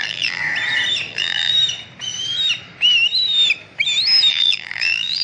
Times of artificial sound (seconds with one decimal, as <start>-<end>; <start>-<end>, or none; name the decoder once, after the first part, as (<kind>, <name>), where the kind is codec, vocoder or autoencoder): 0.0-0.4 (vocoder, BigVGAN v2); 1.1-1.5; 4.3-5.2